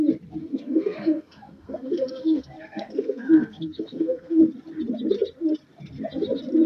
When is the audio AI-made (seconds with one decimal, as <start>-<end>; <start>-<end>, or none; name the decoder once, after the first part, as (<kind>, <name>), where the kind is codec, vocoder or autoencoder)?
0.4-4.4 (codec, SNAC)